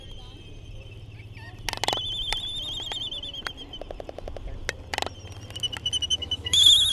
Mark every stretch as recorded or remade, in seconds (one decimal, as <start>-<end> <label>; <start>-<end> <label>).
0.0-6.1 recorded; 6.1-6.9 remade